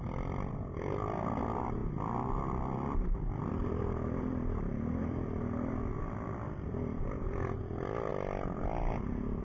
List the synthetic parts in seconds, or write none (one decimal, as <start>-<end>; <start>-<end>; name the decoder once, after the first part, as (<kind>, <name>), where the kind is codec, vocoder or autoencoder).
0.0-1.8 (vocoder, BigVGAN v2); 2.5-8.1